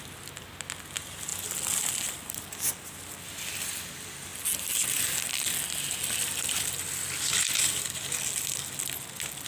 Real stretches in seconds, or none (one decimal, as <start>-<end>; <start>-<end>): 0.0-9.5